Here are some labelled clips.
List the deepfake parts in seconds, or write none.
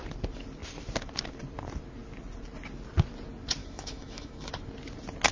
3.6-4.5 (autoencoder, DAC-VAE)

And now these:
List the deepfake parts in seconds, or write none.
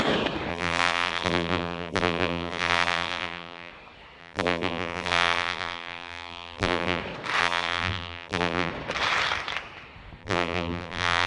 0.5-3.7 (vocoder, BigVGAN v2); 4.2-7.0; 7.4-8.7; 10.2-11.3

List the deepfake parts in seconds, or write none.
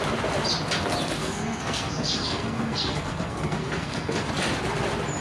1.2-4.3 (codec, SNAC)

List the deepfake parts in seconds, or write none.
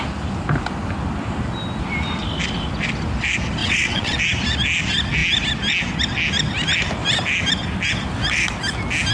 3.6-4.2 (vocoder, WaveNeXt)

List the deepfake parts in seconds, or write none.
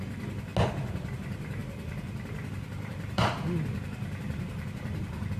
0.0-0.5 (vocoder, BigVGAN v2); 1.1-5.4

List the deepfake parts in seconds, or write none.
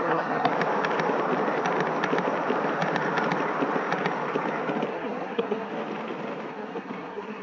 0.0-0.5 (codec, SNAC); 4.9-5.7; 6.5-7.4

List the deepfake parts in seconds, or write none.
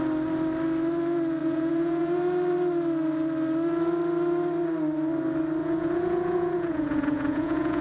1.4-2.2 (vocoder, Vocos); 5.6-7.8